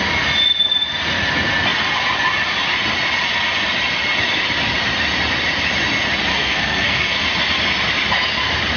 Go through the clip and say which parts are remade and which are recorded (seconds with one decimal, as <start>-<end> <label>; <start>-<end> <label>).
0.0-6.3 recorded; 6.3-7.2 remade; 7.2-8.8 recorded